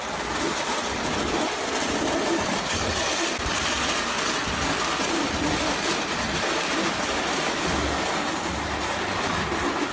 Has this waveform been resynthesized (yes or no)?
no